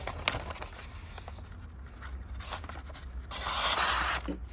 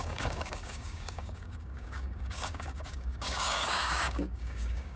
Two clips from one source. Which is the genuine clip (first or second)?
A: first